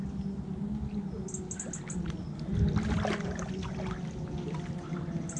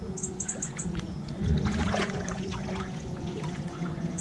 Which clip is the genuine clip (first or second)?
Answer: first